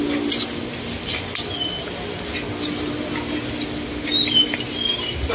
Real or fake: real